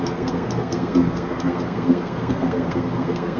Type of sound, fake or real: fake